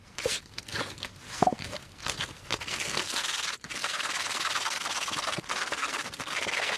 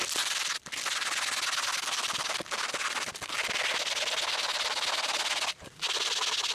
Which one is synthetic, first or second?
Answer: first